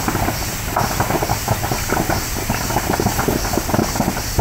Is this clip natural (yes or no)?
yes